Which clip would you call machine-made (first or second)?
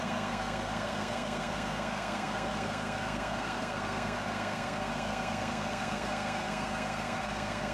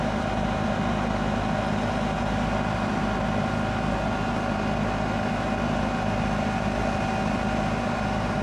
first